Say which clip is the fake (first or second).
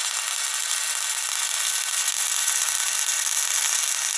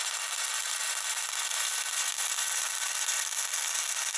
second